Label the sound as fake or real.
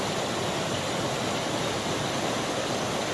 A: real